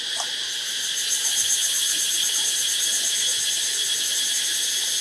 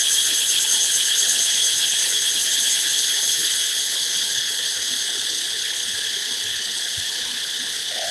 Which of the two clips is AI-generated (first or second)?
second